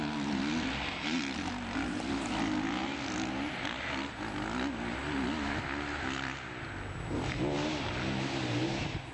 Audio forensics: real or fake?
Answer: real